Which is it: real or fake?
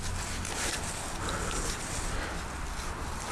real